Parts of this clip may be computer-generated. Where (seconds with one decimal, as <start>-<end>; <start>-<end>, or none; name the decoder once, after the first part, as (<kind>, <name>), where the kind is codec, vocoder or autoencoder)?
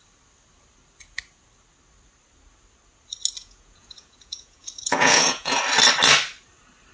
3.4-5.6 (vocoder, Vocos)